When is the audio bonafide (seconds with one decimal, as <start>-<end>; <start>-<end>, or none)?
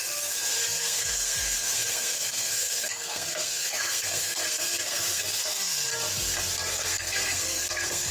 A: 5.9-6.7